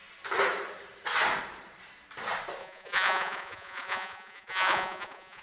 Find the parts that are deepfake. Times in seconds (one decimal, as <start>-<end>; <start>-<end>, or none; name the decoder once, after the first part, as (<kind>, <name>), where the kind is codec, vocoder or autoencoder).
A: 2.6-5.4 (vocoder, Vocos)